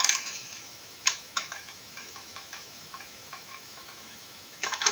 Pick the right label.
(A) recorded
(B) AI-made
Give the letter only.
B